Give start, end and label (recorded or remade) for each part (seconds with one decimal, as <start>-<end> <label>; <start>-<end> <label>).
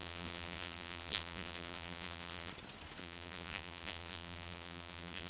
0.0-2.5 remade; 2.5-3.0 recorded; 3.0-5.3 remade